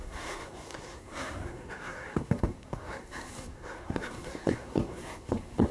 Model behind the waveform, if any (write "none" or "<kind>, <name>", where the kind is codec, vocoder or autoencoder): codec, SNAC